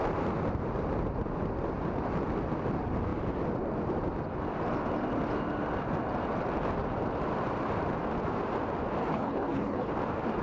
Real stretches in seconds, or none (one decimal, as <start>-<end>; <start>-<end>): 0.0-9.0; 9.9-10.4